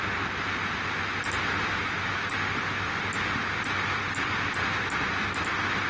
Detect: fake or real real